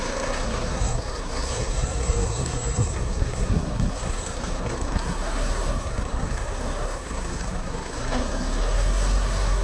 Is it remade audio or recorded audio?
remade